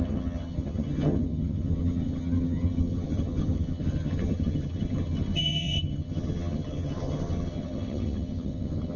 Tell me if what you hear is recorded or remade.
remade